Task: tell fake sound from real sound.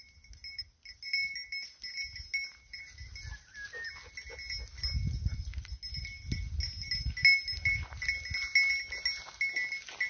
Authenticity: real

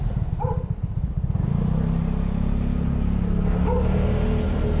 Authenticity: real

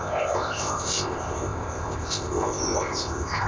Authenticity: fake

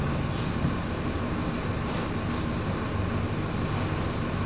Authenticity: real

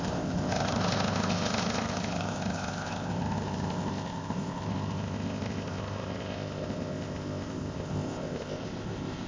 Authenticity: fake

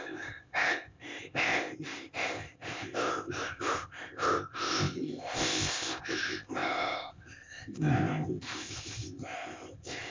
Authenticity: fake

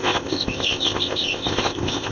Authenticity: fake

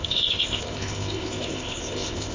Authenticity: fake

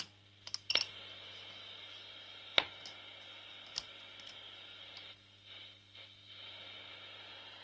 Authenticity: real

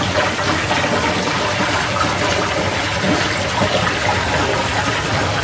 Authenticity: real